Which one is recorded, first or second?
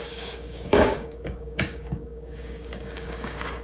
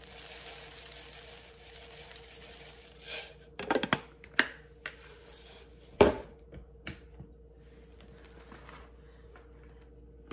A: second